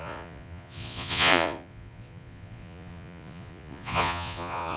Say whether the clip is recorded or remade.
remade